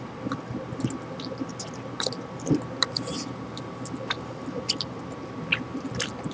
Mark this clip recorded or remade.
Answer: recorded